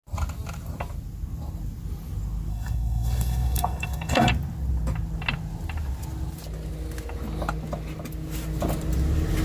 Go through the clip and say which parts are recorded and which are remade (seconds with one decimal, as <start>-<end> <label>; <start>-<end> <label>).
0.0-2.5 recorded; 2.5-4.3 remade; 4.3-9.4 recorded